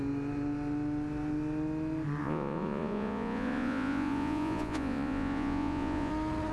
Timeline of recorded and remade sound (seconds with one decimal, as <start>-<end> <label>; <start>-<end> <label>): 0.0-2.2 recorded; 2.2-6.1 remade; 6.1-6.5 recorded